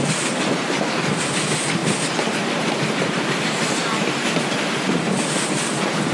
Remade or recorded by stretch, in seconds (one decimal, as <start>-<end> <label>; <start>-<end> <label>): 0.0-6.1 recorded